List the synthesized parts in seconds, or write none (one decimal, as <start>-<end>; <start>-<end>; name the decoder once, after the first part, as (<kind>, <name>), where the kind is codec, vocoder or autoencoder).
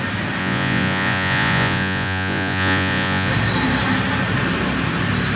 0.4-3.3 (vocoder, Vocos)